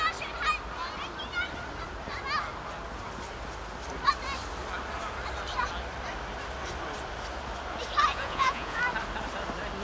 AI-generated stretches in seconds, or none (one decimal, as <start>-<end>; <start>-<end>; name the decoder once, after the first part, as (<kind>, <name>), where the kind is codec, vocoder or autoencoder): 8.1-8.8 (vocoder, Vocos)